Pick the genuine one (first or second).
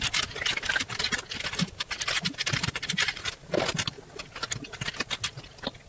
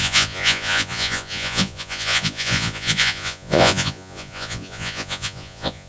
first